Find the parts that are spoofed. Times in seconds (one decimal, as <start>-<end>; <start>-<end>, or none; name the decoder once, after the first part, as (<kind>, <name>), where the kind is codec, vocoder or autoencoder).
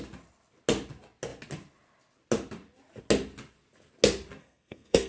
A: 4.4-5.1 (codec, SNAC)